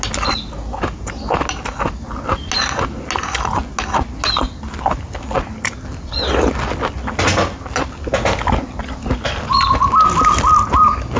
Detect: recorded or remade recorded